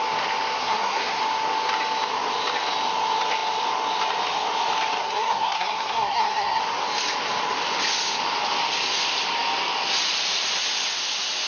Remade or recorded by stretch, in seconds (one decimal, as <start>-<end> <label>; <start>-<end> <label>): 0.0-0.6 recorded; 0.6-1.2 remade; 1.2-5.0 recorded; 5.0-6.6 remade; 6.6-11.5 recorded